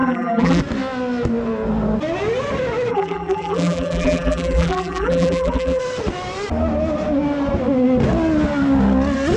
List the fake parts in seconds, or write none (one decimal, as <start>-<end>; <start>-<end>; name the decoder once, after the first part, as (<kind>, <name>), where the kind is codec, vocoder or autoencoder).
0.0-0.6 (vocoder, BigVGAN v2); 2.9-5.8